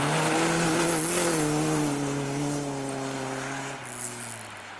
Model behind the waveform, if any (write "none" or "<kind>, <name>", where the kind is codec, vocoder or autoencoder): none